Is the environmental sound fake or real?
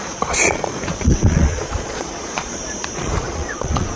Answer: fake